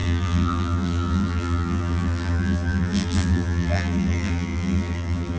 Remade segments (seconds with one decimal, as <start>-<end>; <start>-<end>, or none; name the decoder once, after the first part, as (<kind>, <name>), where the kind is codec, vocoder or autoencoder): 0.0-5.4 (vocoder, BigVGAN v2)